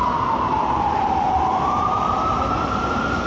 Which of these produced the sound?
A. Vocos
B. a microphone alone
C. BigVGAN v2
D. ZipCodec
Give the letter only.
C